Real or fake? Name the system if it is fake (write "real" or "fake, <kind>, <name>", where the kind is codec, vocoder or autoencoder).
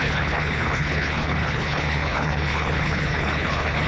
fake, codec, HILCodec